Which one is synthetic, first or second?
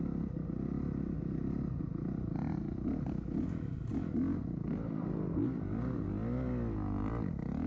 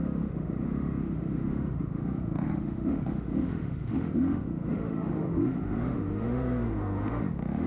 second